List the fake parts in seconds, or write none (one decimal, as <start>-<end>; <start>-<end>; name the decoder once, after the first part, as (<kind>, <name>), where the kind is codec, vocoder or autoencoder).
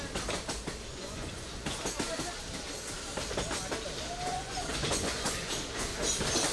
0.9-1.8 (vocoder, Vocos); 4.3-5.5